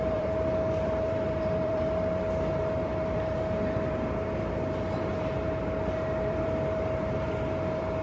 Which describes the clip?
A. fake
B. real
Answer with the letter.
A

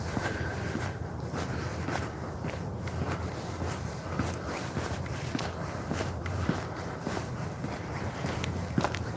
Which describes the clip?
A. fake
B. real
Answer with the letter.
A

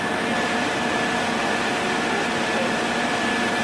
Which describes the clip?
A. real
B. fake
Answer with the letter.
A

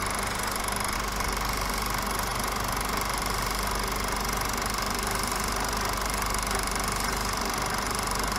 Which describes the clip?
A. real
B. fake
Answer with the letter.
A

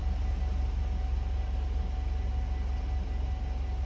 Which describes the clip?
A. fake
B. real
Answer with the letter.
B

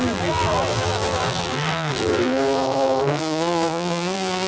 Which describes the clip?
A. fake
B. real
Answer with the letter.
A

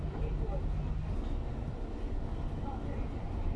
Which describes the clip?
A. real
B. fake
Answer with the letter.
A